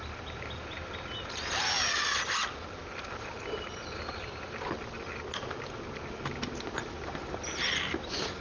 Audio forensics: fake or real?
real